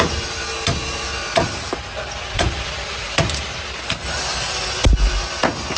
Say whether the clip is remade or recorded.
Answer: recorded